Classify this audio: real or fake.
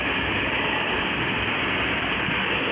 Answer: real